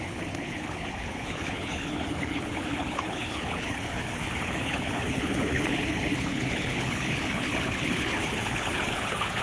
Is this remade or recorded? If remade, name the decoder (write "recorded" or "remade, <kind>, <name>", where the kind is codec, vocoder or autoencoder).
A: remade, codec, HILCodec